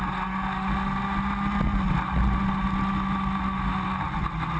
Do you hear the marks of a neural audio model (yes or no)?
no